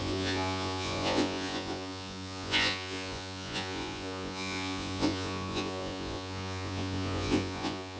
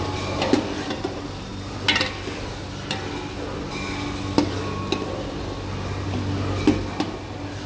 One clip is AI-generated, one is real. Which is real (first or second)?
second